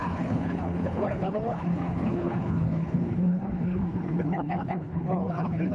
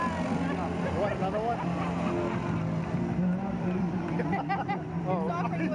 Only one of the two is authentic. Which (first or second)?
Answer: second